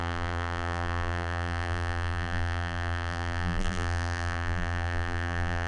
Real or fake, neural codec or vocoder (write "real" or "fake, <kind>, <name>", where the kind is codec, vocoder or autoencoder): fake, vocoder, BigVGAN v2